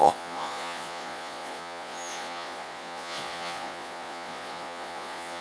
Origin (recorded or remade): remade